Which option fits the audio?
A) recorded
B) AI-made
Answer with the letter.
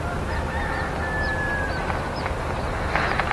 A